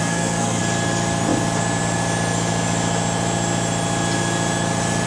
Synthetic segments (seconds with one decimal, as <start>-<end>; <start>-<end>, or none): 0.0-0.6